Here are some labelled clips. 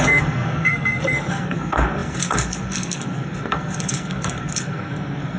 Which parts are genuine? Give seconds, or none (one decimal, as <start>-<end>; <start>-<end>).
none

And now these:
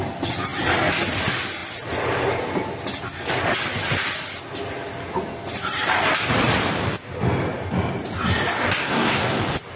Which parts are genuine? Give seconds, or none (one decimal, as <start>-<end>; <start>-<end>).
0.0-8.8; 9.4-9.8

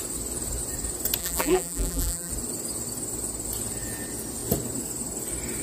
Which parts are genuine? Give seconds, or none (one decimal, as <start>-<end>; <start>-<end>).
0.0-1.2; 2.3-5.6

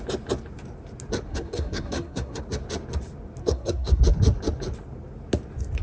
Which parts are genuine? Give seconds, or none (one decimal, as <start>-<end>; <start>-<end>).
0.0-1.3; 2.4-3.4; 4.0-5.8

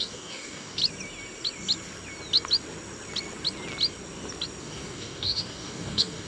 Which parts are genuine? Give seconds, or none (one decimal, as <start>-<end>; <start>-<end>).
0.8-4.6

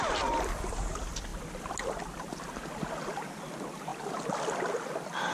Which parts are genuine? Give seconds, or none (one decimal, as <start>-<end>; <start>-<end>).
0.0-5.3

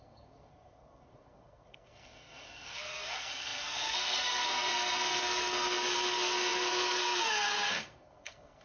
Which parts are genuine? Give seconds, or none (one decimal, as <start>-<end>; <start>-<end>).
none

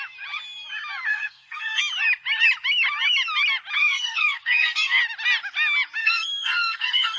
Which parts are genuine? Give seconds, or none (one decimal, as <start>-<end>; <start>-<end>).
0.0-1.1; 1.8-3.8; 5.0-6.0